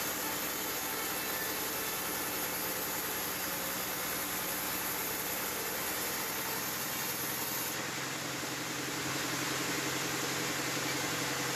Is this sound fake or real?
real